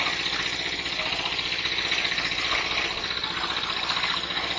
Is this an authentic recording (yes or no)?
yes